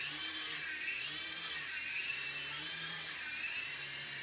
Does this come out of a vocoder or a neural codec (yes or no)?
yes